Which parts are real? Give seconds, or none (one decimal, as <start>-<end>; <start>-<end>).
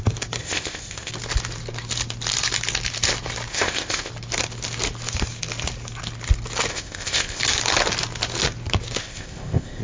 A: 0.0-0.4; 1.1-3.5; 4.1-6.7; 7.4-9.0